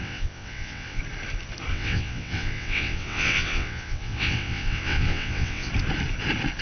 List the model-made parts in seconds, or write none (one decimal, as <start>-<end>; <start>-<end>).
0.0-1.0; 1.7-5.7